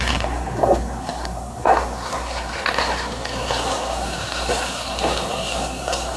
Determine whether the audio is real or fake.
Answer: fake